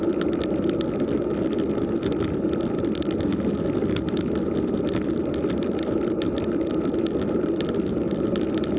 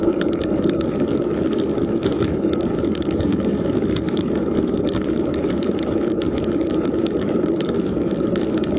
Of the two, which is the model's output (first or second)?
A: second